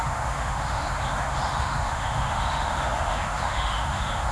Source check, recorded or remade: remade